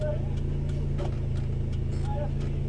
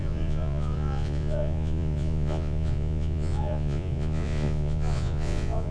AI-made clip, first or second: second